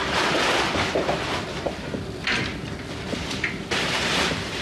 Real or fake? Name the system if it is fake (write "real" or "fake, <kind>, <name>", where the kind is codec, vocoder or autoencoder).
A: fake, vocoder, BigVGAN v2